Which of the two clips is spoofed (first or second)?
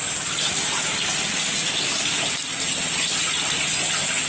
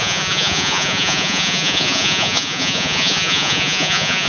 second